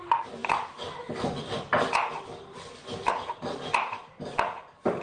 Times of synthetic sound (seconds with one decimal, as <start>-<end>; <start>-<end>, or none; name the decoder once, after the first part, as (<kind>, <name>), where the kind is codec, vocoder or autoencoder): none